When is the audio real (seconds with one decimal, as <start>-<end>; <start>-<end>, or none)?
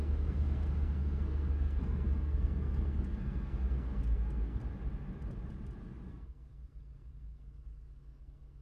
4.6-6.1